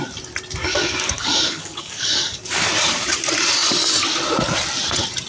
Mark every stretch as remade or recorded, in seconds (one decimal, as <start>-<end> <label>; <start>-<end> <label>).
0.0-0.6 recorded; 0.6-2.7 remade; 2.7-5.3 recorded